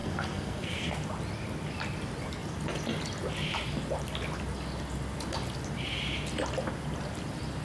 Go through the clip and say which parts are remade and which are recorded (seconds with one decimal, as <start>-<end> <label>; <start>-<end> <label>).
0.0-0.9 remade; 0.9-7.6 recorded